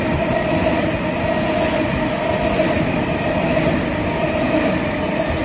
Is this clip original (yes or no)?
yes